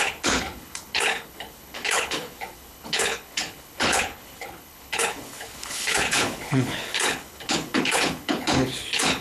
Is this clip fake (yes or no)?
yes